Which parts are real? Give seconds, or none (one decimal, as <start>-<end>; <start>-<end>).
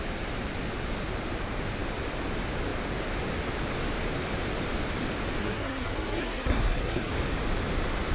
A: 0.0-5.4; 7.1-8.1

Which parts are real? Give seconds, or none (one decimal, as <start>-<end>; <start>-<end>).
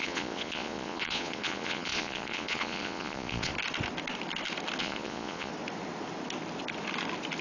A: 3.5-4.8; 5.5-7.4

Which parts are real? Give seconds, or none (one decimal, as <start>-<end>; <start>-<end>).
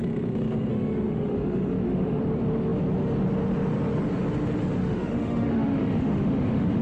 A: 0.0-0.7; 2.2-4.8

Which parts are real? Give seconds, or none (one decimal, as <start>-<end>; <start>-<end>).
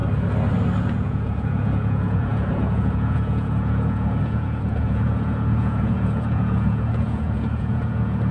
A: 0.0-0.8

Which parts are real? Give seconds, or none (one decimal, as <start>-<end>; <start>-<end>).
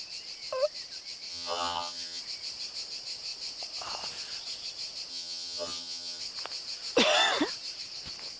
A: 0.0-1.3; 2.2-5.1; 6.2-8.4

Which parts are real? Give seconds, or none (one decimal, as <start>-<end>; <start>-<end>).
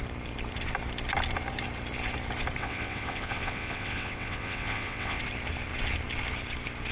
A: 0.0-2.6; 5.2-6.9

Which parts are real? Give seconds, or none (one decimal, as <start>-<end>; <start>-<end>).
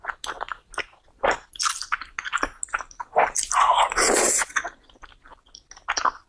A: 0.0-6.3